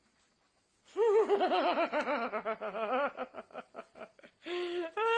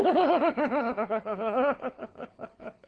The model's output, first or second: second